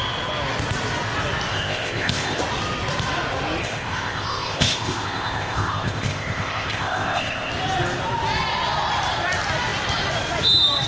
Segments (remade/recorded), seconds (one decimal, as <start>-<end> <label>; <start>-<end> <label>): 0.0-1.5 recorded; 1.5-2.4 remade; 2.4-3.6 recorded; 3.6-7.5 remade; 7.5-10.9 recorded

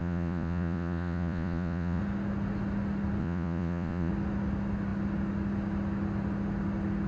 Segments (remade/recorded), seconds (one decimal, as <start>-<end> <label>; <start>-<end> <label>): 0.0-2.0 remade; 2.0-3.2 recorded; 3.2-4.1 remade; 4.1-7.1 recorded

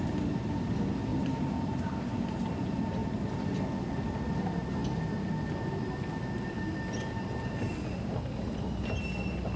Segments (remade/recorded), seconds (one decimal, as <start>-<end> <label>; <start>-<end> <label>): 0.0-1.1 recorded; 1.1-2.4 remade; 2.4-9.6 recorded

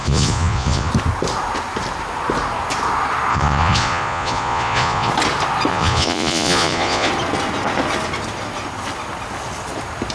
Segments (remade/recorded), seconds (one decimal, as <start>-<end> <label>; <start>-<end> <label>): 0.0-0.9 remade; 0.9-3.3 recorded; 3.3-5.1 remade; 5.1-5.7 recorded; 5.7-7.1 remade; 7.1-10.1 recorded

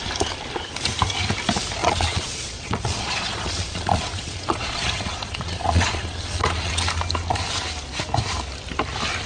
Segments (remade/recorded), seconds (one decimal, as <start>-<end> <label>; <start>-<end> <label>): 0.0-1.8 recorded; 1.8-6.7 remade; 6.7-9.3 recorded

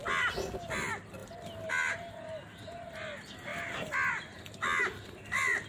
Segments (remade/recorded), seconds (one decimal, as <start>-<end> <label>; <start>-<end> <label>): 0.0-3.5 recorded; 3.5-4.1 remade; 4.1-5.7 recorded

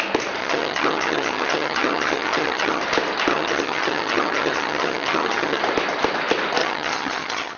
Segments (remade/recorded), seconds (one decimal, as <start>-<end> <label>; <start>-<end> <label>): 0.0-0.4 recorded; 0.4-2.8 remade; 2.8-3.3 recorded; 3.3-5.6 remade; 5.6-6.6 recorded; 6.6-7.6 remade